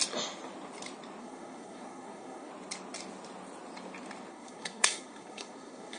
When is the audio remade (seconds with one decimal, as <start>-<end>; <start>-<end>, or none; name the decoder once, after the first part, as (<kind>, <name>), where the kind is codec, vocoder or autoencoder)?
1.2-2.5 (codec, SNAC); 4.3-6.0